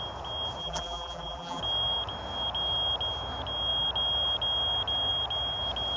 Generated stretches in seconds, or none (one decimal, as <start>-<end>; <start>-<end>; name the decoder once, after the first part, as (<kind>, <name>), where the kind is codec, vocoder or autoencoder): 0.6-1.6 (vocoder, BigVGAN v2)